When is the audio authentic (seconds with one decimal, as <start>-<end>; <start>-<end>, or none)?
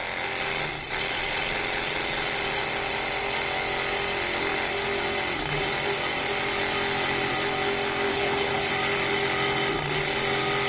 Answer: 0.0-8.1; 8.7-10.7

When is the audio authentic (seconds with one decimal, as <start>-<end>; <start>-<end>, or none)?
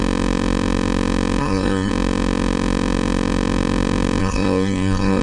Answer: 0.0-1.4; 1.9-4.2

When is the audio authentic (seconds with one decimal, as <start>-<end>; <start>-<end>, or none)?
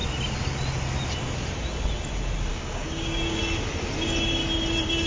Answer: 0.0-2.5; 3.4-5.1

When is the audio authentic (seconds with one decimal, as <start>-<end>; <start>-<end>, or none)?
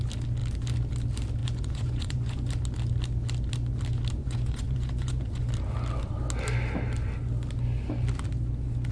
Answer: 0.0-1.4; 2.5-4.2; 5.5-8.9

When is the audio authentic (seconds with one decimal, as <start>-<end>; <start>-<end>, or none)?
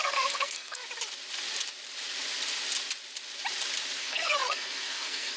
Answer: 0.8-4.0